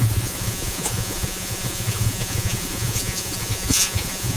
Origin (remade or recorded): remade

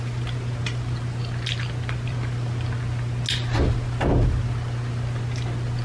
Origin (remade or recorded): recorded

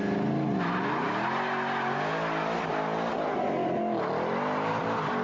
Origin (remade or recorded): recorded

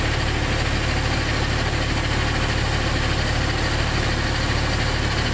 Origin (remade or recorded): recorded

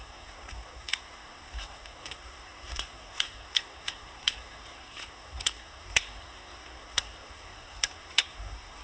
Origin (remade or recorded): remade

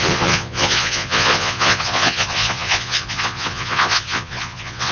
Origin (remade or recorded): remade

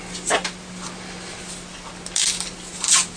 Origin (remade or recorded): recorded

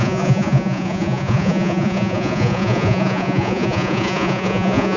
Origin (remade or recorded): remade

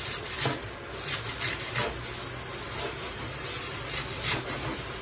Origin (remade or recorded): recorded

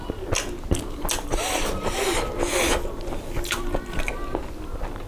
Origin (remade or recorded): recorded